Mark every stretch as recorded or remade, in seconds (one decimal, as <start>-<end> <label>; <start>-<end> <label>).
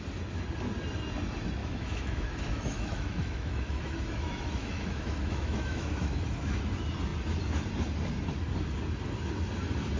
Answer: 0.0-1.6 recorded; 1.6-6.6 remade; 6.6-10.0 recorded